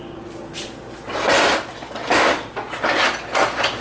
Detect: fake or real real